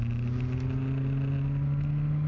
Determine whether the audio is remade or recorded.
recorded